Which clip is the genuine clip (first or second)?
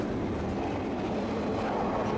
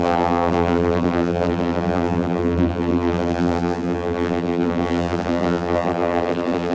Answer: first